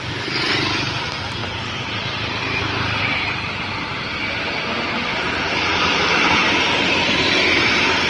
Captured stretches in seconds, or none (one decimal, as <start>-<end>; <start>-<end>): 0.0-1.4; 3.7-5.1